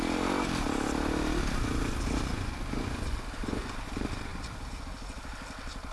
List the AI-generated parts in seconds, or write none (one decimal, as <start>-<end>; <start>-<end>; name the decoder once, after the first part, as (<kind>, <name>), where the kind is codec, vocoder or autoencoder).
2.3-3.8 (vocoder, Vocos)